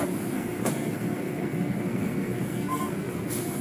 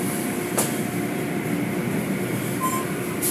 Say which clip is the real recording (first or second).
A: second